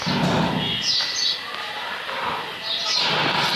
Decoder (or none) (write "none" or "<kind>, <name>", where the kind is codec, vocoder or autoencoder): none